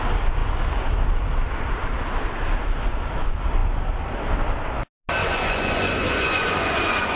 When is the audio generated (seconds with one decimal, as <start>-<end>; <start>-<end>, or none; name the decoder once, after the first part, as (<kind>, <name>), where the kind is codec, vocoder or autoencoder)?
5.2-7.2 (vocoder, Vocos)